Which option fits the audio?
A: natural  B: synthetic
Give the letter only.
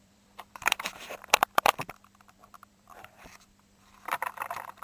B